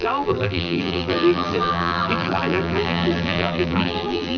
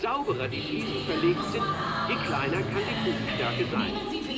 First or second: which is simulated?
first